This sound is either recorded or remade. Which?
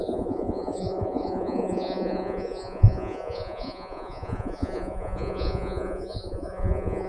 remade